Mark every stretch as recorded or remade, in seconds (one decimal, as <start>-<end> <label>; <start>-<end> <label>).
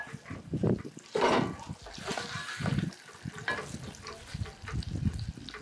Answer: 0.0-5.6 recorded